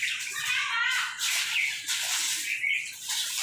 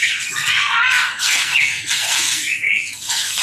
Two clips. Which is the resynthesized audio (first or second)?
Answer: second